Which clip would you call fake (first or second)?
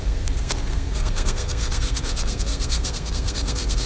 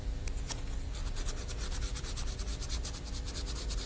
first